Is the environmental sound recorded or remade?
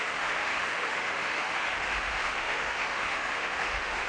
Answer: remade